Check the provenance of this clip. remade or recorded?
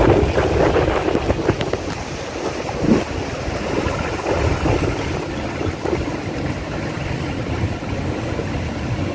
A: recorded